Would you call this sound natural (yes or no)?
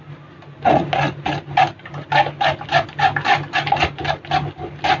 yes